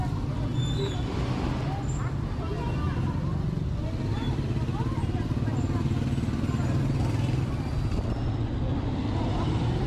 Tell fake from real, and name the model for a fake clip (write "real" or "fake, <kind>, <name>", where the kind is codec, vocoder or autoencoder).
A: real